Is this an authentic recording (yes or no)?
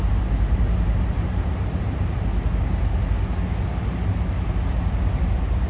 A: yes